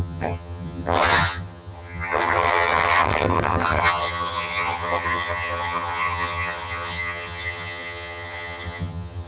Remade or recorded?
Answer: remade